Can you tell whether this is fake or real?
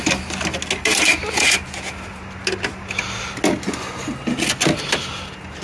real